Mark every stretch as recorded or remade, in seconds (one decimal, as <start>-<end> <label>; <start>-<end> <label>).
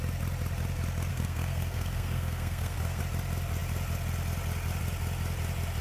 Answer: 0.0-1.1 recorded; 1.1-3.0 remade; 3.0-5.8 recorded